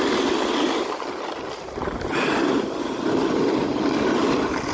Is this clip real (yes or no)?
yes